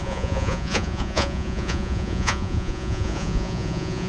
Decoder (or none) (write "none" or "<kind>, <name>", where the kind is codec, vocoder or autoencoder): vocoder, Vocos